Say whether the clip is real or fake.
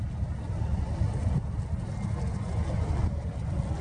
real